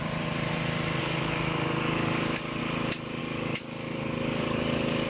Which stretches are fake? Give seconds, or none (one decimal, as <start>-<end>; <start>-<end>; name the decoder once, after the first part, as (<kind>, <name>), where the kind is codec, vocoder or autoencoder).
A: 1.0-2.6 (codec, DAC); 3.2-5.1